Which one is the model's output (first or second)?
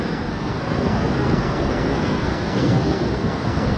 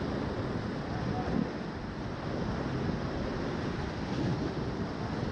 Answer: first